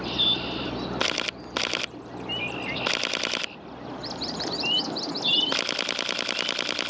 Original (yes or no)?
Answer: no